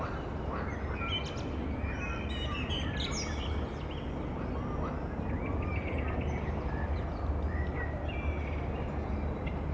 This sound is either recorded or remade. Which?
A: recorded